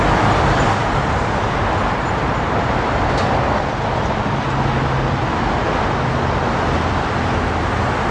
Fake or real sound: real